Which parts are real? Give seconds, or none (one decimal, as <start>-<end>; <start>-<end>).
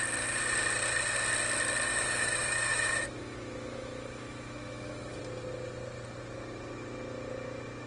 0.0-1.9; 5.2-7.9